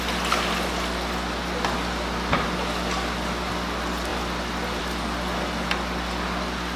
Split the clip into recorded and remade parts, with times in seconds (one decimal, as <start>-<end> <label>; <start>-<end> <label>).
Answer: 0.0-6.8 recorded